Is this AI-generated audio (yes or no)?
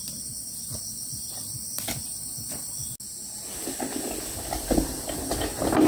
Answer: no